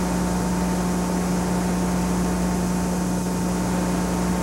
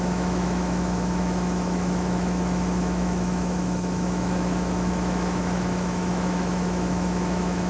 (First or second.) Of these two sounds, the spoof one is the second